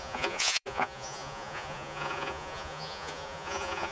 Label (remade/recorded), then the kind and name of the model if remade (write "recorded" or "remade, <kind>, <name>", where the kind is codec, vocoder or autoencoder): remade, vocoder, Vocos